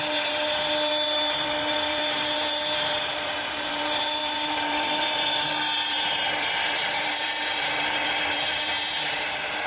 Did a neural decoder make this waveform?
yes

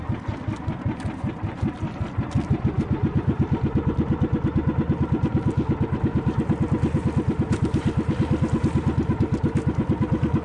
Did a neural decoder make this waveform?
no